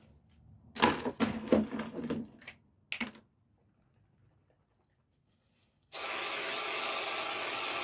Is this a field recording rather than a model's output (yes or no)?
yes